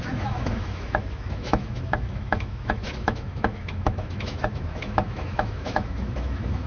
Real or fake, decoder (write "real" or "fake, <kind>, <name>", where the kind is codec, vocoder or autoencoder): fake, autoencoder, DAC-VAE